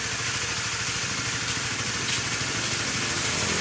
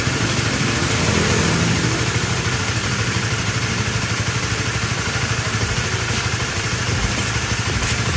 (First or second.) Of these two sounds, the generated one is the second